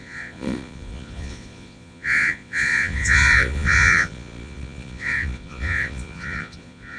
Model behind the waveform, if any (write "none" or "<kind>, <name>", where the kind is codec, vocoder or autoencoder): vocoder, Vocos